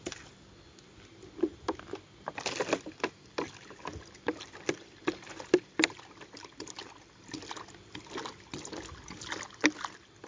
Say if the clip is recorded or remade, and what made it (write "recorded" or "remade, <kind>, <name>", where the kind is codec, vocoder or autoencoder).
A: recorded